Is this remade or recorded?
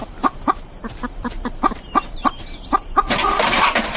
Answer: remade